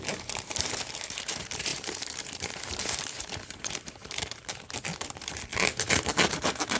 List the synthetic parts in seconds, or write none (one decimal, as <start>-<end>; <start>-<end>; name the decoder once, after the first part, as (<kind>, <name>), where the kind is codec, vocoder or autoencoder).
0.0-6.8 (vocoder, BigVGAN v2)